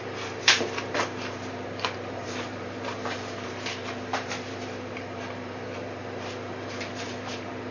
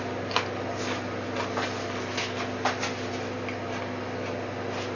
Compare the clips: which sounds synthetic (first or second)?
first